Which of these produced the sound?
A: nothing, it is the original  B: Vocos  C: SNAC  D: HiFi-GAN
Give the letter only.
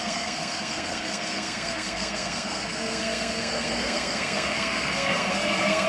C